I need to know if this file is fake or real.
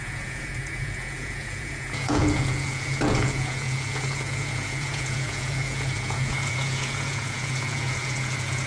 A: fake